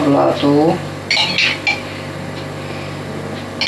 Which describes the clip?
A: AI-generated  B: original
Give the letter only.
B